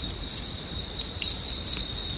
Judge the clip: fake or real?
real